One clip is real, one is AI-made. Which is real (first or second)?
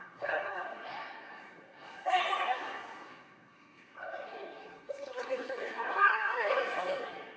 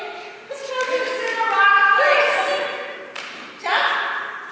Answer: second